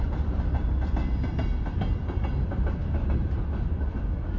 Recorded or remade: recorded